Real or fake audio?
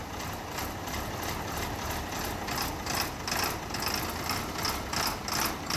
real